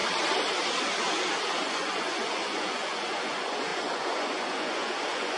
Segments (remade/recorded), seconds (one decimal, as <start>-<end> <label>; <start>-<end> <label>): 0.0-1.6 recorded; 1.6-5.4 remade